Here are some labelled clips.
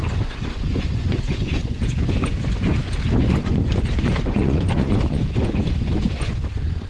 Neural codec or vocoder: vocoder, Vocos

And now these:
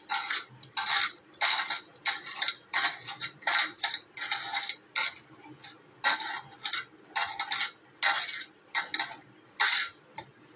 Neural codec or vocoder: none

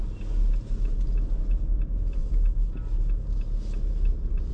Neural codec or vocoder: none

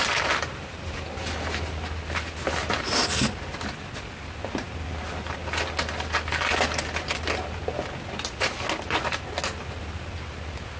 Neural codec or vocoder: none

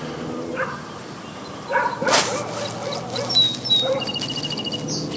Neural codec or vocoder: none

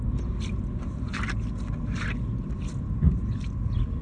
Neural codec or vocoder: none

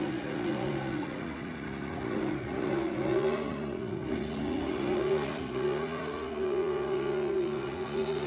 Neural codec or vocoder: vocoder, Vocos